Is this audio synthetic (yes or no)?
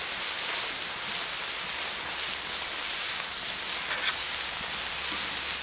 no